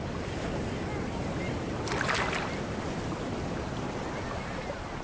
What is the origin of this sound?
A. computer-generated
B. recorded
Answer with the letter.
B